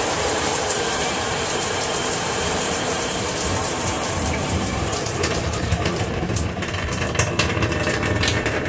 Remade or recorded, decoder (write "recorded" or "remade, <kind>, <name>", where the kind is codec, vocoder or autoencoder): remade, vocoder, BigVGAN v2